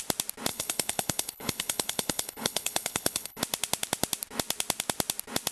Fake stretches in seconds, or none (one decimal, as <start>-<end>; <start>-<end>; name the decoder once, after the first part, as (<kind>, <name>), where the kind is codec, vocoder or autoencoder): 0.5-3.4 (codec, HILCodec)